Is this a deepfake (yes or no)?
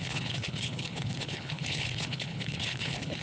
yes